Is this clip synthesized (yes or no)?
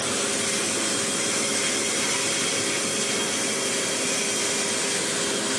no